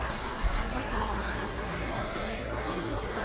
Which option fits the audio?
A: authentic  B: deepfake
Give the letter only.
B